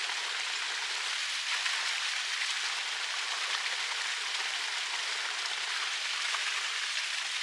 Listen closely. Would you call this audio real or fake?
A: real